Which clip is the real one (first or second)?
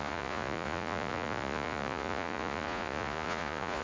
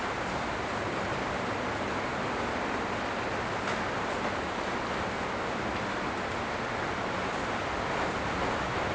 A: second